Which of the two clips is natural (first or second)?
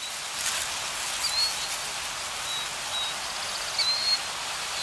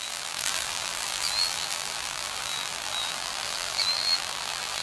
first